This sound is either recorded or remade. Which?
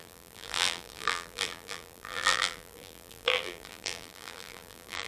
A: remade